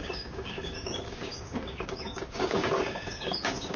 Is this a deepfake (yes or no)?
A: yes